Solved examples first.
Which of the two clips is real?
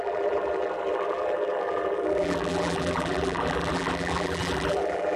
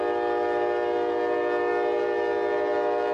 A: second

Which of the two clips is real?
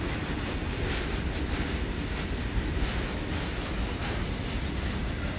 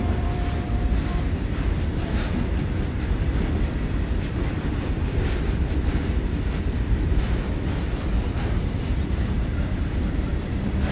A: first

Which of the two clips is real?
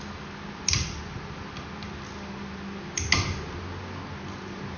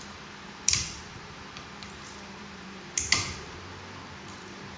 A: first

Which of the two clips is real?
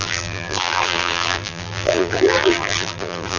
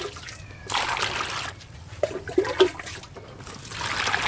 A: second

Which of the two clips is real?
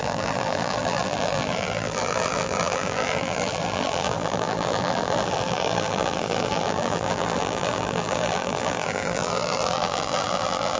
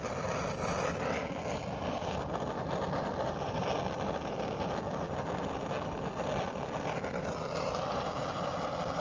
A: second